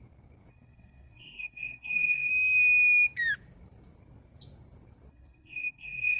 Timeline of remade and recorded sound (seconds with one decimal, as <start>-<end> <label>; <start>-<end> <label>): 0.0-0.5 recorded; 0.5-2.3 remade; 2.3-5.1 recorded; 5.1-6.2 remade